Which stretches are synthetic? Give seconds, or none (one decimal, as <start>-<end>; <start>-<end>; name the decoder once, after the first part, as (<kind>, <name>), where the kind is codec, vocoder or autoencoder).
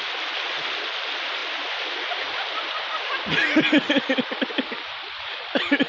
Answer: 1.4-4.5 (vocoder, BigVGAN v2)